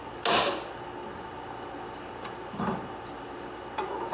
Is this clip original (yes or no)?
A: yes